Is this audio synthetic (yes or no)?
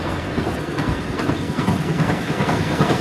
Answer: yes